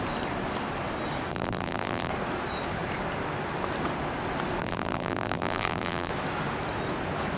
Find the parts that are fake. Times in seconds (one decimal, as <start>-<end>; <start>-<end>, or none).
1.3-2.1; 4.6-6.1